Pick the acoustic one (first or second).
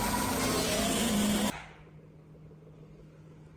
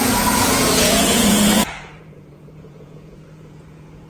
first